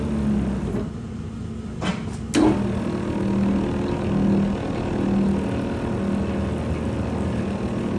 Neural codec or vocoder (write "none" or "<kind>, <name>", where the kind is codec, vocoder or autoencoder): none